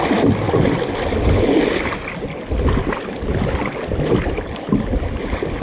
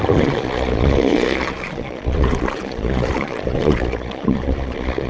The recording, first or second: first